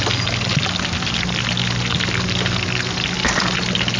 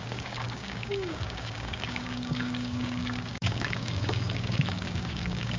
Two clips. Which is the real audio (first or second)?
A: first